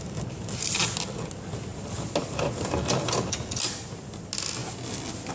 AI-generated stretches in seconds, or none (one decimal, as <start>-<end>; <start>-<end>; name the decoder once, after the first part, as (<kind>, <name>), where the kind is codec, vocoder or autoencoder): none